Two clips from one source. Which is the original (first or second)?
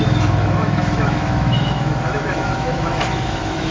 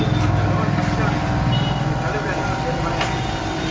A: second